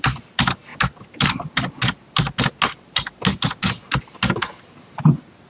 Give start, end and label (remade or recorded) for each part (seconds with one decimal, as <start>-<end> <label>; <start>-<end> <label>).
0.0-5.5 recorded